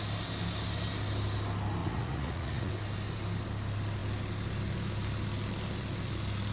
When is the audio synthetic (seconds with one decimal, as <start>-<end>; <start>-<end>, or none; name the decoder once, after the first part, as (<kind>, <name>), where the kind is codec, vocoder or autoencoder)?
1.8-2.7 (vocoder, Vocos)